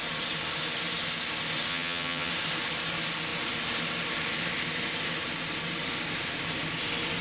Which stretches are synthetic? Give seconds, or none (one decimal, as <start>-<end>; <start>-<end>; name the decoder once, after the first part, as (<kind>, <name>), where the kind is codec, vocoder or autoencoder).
1.7-2.3 (vocoder, HiFi-GAN)